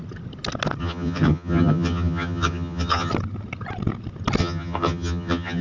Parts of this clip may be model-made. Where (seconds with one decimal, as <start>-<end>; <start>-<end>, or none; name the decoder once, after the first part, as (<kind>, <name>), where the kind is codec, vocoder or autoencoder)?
0.8-3.1 (vocoder, HiFi-GAN); 4.4-5.6